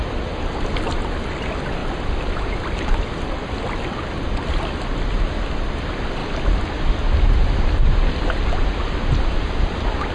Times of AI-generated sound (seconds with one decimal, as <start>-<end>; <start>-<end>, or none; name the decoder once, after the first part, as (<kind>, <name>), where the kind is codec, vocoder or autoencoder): none

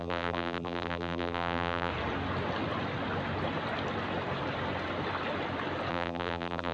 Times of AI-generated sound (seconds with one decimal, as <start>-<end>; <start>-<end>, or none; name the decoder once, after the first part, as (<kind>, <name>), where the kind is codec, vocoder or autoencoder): 0.0-1.9 (vocoder, BigVGAN v2); 5.9-6.7

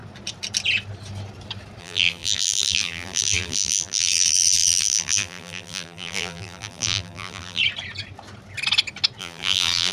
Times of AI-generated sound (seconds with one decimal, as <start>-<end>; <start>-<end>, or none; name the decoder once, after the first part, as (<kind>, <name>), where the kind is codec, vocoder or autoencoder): 1.8-7.6 (vocoder, BigVGAN v2); 9.2-9.9

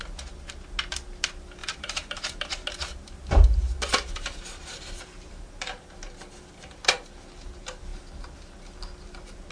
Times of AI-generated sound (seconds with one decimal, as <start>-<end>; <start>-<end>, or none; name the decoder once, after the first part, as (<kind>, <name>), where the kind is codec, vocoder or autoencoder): 1.6-5.7 (vocoder, BigVGAN v2)

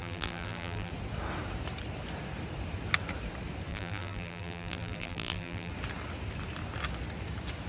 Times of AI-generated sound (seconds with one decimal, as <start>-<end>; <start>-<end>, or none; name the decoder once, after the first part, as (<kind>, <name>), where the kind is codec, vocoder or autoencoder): 0.0-0.9 (vocoder, BigVGAN v2); 3.7-5.7

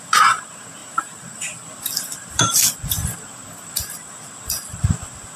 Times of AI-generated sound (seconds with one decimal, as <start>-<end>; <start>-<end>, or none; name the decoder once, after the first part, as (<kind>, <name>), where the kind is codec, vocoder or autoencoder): 0.8-3.7 (vocoder, BigVGAN v2)